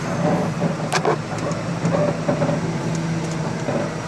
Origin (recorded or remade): recorded